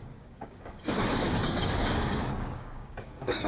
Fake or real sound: fake